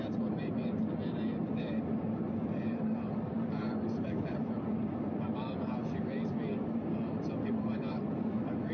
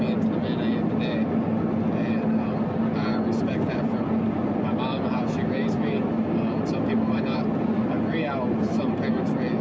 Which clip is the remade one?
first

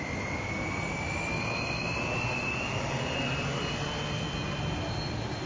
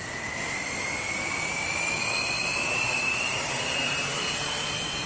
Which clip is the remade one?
second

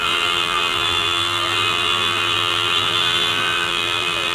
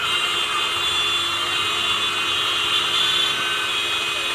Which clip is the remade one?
first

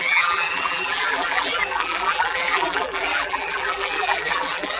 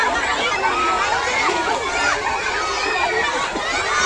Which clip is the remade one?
first